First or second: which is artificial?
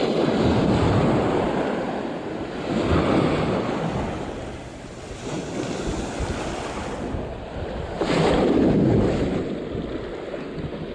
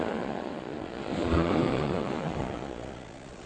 second